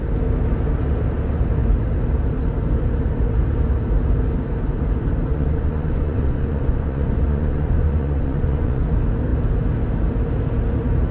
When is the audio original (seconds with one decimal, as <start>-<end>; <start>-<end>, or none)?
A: 0.0-5.3; 8.8-11.1